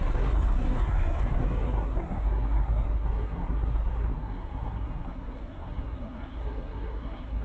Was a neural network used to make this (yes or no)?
yes